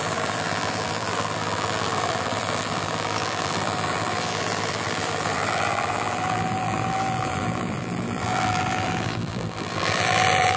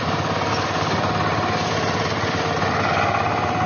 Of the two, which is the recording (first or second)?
second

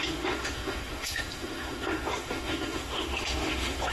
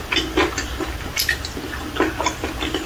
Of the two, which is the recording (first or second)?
second